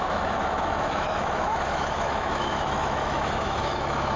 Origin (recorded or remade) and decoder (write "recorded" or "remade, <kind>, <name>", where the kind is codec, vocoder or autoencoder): remade, autoencoder, DAC-VAE